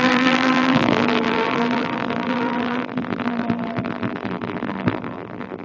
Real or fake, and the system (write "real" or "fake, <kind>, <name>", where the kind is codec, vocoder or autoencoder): fake, vocoder, BigVGAN v2